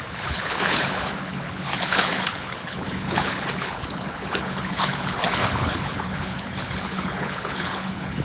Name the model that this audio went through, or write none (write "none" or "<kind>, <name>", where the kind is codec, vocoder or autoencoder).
codec, HILCodec